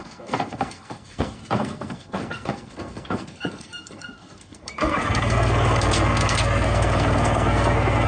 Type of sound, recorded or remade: remade